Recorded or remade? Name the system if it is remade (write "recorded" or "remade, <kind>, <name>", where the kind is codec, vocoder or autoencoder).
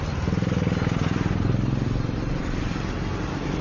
recorded